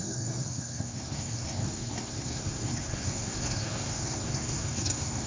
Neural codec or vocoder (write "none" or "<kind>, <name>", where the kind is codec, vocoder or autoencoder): codec, SNAC